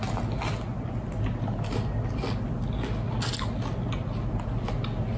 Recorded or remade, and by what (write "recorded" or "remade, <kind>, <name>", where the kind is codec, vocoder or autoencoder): recorded